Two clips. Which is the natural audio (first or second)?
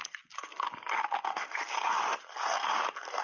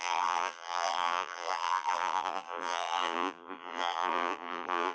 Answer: first